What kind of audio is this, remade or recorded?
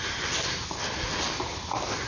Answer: recorded